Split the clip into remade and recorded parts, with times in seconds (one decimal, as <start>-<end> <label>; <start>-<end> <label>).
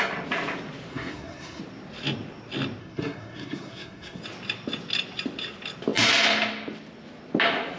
0.0-0.9 recorded; 0.9-1.6 remade; 1.6-2.8 recorded; 2.8-4.2 remade; 4.2-7.8 recorded